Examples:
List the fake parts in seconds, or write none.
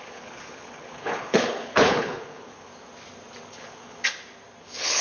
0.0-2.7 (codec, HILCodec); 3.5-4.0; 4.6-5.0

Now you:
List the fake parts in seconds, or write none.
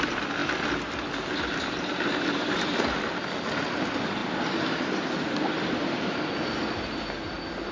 none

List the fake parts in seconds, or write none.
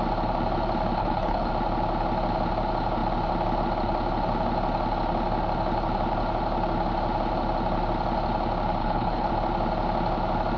1.0-1.5 (codec, HILCodec); 8.8-9.3